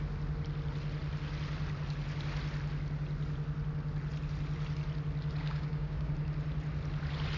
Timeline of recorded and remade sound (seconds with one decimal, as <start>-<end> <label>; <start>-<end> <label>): 0.0-5.4 recorded; 5.4-6.1 remade; 6.1-7.4 recorded